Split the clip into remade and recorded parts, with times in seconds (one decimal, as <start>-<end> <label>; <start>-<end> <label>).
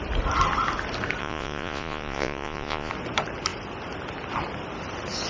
0.0-1.2 recorded; 1.2-2.9 remade; 2.9-5.3 recorded